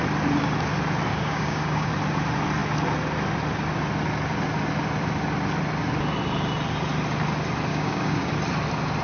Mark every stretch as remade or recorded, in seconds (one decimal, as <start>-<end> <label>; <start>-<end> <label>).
0.0-1.1 recorded; 1.1-1.9 remade; 1.9-7.7 recorded; 7.7-8.3 remade; 8.3-9.0 recorded